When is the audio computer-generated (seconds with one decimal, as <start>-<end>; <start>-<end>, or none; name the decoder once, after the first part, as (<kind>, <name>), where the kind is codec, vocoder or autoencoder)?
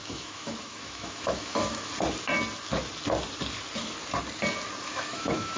0.0-1.9 (autoencoder, DAC-VAE); 4.8-5.6